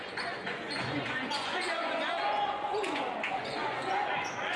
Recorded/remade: remade